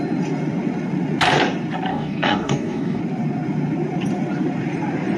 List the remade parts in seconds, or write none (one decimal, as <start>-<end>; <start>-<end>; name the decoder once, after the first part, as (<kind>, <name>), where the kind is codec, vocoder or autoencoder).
1.9-3.0 (codec, DAC)